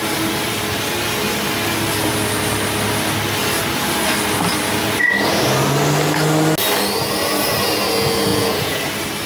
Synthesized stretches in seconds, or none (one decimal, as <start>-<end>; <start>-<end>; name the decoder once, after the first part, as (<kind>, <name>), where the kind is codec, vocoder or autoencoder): 8.3-8.8 (vocoder, Vocos)